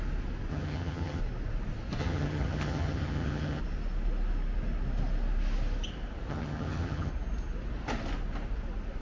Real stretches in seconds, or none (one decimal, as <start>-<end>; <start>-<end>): 0.0-0.5; 1.2-2.0; 3.6-6.3; 7.1-9.0